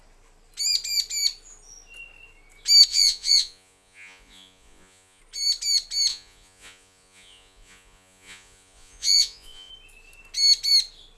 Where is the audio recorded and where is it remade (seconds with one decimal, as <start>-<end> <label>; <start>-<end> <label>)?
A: 0.0-2.9 recorded; 2.9-5.2 remade; 5.2-6.1 recorded; 6.1-9.7 remade; 9.7-11.2 recorded